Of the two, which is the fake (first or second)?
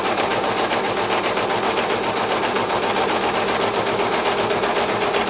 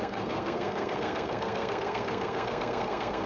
second